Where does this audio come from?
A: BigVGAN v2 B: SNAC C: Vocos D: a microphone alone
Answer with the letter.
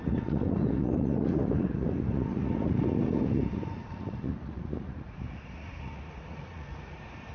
C